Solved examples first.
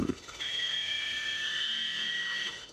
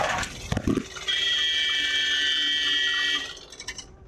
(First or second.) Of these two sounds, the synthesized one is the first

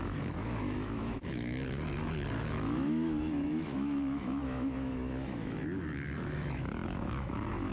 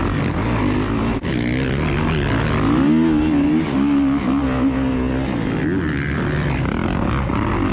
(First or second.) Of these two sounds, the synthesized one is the first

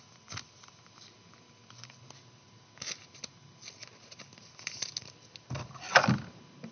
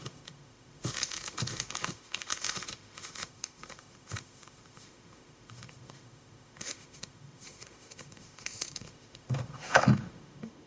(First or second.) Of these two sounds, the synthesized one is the second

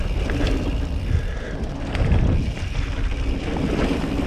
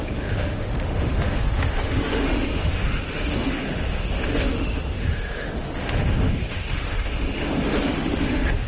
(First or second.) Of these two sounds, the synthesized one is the second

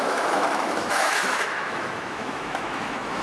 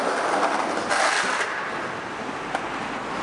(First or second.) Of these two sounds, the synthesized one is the first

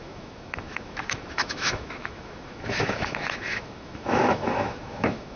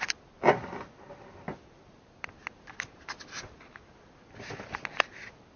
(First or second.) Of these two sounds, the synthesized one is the first